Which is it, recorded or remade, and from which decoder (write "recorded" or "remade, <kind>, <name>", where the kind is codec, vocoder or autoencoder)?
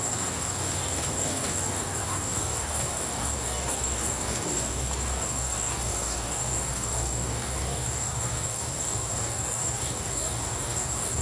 remade, codec, DAC